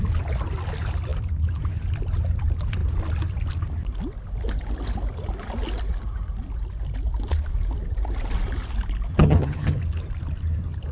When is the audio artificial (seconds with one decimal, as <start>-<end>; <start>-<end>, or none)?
9.1-9.8